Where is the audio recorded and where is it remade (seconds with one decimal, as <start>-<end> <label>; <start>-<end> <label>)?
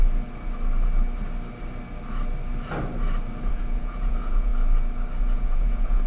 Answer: 0.0-3.5 recorded; 3.5-4.5 remade; 4.5-5.2 recorded; 5.2-6.1 remade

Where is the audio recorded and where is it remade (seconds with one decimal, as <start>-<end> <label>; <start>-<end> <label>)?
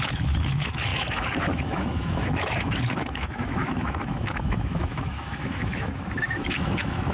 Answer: 0.0-7.1 remade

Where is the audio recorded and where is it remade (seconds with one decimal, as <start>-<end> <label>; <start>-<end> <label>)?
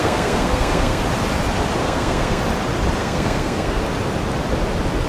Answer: 0.0-1.0 remade; 1.0-1.8 recorded; 1.8-2.4 remade; 2.4-3.0 recorded; 3.0-3.8 remade; 3.8-5.1 recorded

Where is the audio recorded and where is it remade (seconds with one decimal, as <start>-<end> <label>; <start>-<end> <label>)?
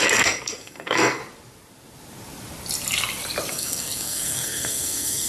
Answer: 0.0-1.2 remade; 1.2-3.5 recorded; 3.5-5.3 remade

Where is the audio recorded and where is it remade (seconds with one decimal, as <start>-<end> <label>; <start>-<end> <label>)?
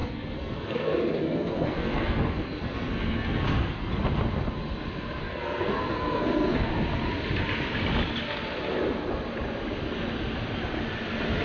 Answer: 0.0-3.9 remade; 3.9-5.2 recorded; 5.2-6.7 remade; 6.7-11.4 recorded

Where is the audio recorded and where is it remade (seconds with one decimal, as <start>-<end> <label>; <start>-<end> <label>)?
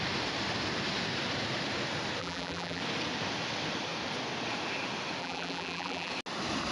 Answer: 0.0-2.2 recorded; 2.2-2.8 remade; 2.8-5.2 recorded; 5.2-6.1 remade; 6.1-6.7 recorded